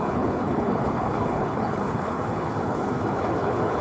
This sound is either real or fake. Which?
fake